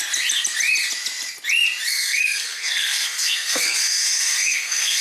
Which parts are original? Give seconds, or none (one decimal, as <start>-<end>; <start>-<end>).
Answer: 0.0-1.9